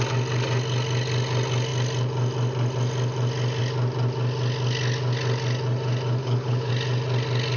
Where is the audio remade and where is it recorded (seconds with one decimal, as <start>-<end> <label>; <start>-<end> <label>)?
0.0-6.2 recorded; 6.2-6.7 remade; 6.7-7.6 recorded